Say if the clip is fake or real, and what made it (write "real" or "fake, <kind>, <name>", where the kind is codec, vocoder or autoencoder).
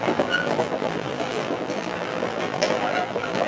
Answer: fake, vocoder, BigVGAN v2